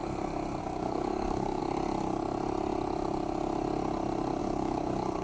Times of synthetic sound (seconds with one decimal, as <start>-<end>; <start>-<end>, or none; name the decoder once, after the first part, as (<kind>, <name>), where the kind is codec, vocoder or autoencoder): 0.6-1.6 (codec, DAC); 4.4-5.2